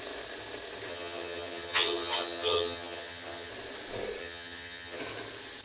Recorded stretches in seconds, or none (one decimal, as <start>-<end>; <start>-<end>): 0.0-0.9; 3.5-4.2; 5.0-5.6